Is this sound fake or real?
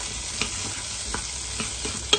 real